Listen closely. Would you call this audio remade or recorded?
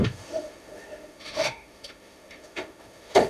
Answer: remade